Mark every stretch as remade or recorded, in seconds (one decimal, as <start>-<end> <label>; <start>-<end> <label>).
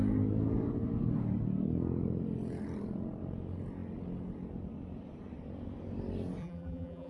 0.0-6.4 recorded; 6.4-7.1 remade